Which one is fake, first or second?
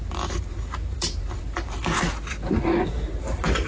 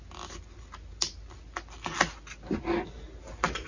first